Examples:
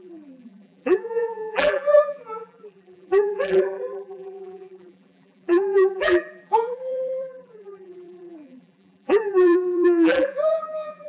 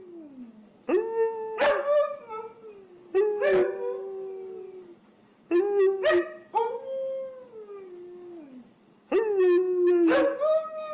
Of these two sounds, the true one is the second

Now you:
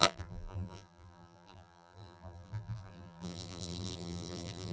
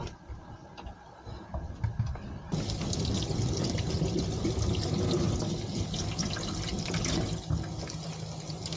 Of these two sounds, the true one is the second